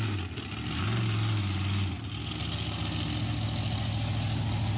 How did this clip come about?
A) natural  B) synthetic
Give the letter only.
A